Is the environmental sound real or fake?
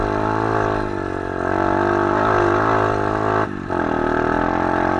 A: real